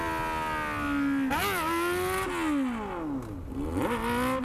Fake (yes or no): no